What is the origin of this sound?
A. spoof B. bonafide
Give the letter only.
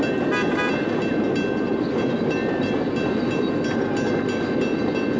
B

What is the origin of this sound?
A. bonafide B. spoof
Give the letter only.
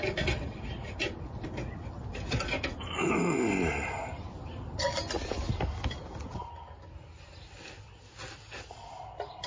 A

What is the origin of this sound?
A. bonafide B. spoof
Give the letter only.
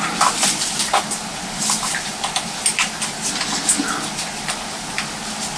A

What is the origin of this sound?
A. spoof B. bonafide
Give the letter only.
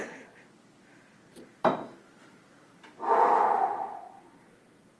B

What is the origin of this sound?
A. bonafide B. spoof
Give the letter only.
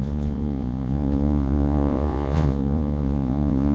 B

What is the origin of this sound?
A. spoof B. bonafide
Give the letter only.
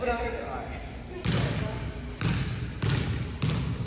B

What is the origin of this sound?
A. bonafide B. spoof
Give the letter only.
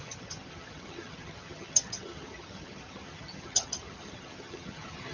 B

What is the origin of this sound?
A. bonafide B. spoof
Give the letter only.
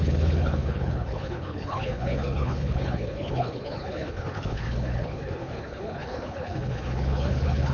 B